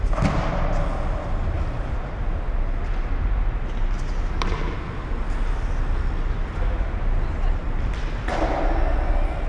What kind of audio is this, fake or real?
real